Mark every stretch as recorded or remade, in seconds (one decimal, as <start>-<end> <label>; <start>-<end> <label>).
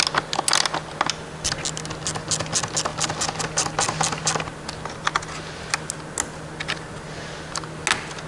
0.0-8.3 recorded